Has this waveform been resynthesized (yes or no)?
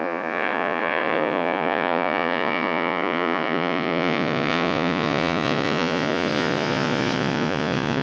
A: yes